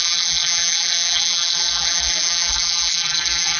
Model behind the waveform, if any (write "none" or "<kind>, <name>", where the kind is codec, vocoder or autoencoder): vocoder, BigVGAN v2